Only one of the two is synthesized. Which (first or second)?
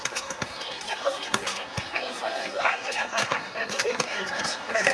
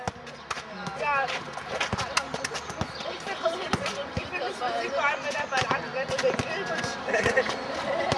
first